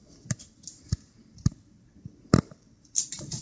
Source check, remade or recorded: recorded